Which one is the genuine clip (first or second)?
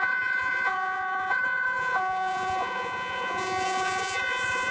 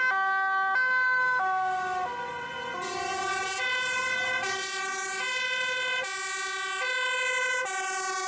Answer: second